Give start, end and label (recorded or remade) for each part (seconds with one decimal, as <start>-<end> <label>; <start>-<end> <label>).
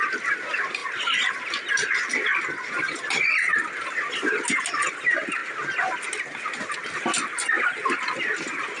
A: 0.0-8.8 recorded